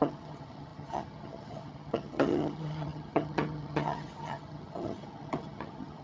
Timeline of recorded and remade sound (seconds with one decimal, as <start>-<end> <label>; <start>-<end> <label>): 0.0-6.0 remade